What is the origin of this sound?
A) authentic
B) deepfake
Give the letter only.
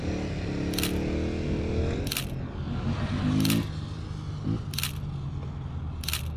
A